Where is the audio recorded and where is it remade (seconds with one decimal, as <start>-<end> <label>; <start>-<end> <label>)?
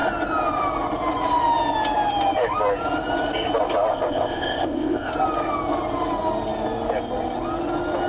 0.0-3.9 recorded; 3.9-5.1 remade; 5.1-8.1 recorded